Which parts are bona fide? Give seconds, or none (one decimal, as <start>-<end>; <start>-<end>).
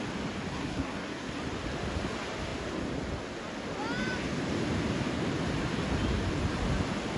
0.0-0.5; 1.3-7.2